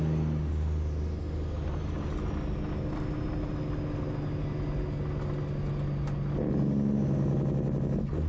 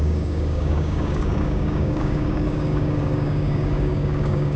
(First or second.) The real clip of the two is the first